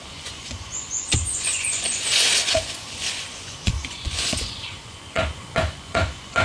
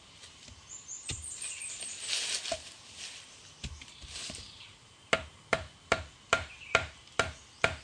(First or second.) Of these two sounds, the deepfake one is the first